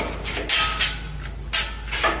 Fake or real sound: real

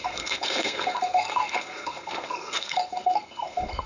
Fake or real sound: fake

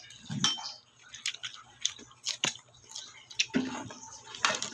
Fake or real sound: real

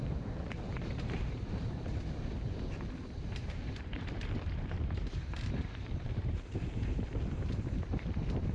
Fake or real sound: fake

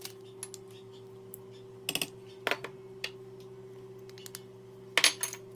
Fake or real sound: real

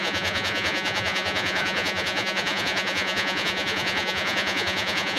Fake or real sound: fake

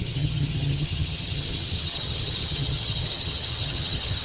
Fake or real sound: fake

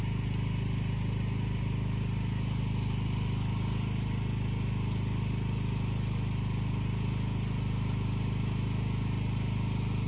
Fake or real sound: real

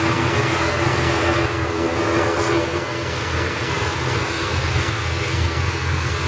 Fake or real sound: fake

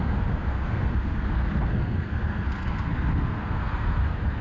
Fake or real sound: fake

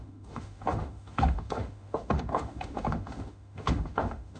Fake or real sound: fake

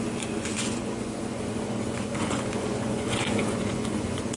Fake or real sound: fake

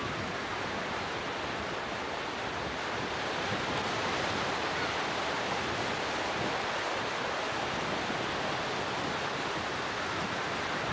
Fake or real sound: real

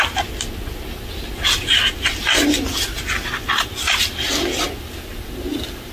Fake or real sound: real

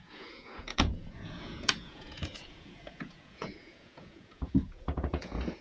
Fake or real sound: fake